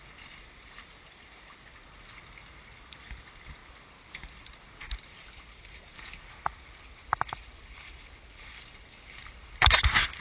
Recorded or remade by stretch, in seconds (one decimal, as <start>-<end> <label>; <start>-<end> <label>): 0.0-10.2 recorded